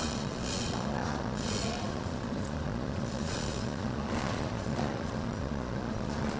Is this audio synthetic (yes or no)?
yes